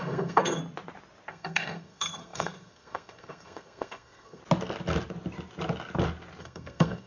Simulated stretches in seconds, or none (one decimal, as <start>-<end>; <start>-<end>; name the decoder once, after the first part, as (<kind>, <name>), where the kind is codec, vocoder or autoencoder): 0.0-0.6 (codec, SNAC); 1.3-4.4; 6.4-7.1